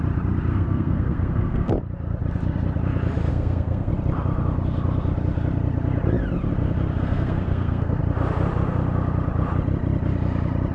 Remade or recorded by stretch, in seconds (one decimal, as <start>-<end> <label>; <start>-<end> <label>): 0.0-0.5 recorded; 0.5-1.7 remade; 1.7-3.3 recorded; 3.3-3.9 remade; 3.9-7.0 recorded; 7.0-8.0 remade; 8.0-10.7 recorded